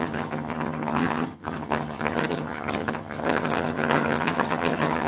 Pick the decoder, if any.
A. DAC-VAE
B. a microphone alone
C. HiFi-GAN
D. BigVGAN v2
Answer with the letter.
C